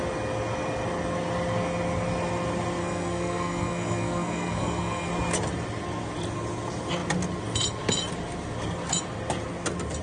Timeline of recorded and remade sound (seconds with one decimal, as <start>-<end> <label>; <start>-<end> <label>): 0.0-2.8 recorded; 2.8-5.1 remade; 5.1-10.0 recorded